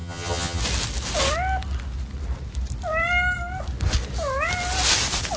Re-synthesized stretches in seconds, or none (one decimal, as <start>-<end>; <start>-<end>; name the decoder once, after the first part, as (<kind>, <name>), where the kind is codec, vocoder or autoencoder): 0.0-0.6 (vocoder, HiFi-GAN)